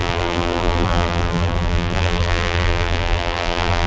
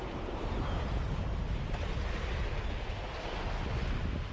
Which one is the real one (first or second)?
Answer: second